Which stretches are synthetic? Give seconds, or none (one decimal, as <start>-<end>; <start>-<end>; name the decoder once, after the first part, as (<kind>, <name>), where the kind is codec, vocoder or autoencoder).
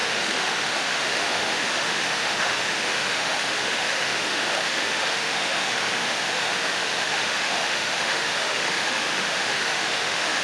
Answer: 0.0-10.4 (autoencoder, DAC-VAE)